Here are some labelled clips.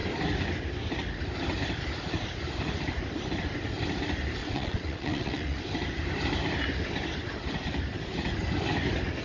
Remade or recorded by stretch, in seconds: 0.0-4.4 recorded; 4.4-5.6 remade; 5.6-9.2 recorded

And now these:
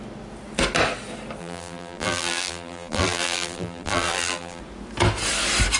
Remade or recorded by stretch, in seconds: 0.0-1.4 recorded; 1.4-4.6 remade; 4.6-5.8 recorded

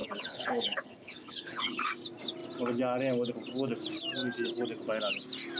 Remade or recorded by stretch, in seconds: 0.0-1.9 remade; 1.9-5.6 recorded